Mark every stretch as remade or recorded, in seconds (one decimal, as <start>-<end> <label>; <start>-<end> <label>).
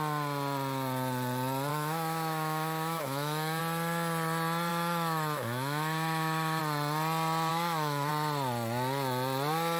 0.0-1.7 recorded; 1.7-3.6 remade; 3.6-4.7 recorded; 4.7-6.6 remade; 6.6-7.5 recorded; 7.5-8.1 remade; 8.1-9.8 recorded